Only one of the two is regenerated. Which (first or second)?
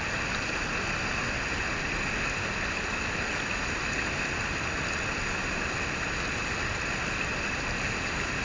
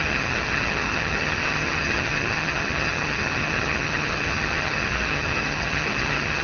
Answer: second